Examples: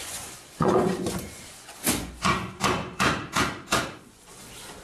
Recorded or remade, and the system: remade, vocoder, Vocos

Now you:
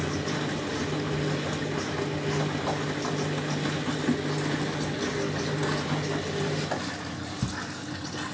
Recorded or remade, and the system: recorded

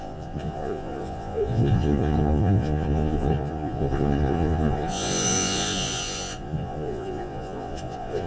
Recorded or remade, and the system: remade, vocoder, Vocos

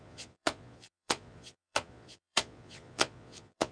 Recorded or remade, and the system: remade, vocoder, Vocos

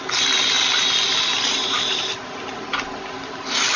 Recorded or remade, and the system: recorded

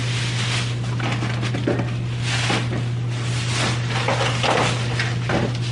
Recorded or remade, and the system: recorded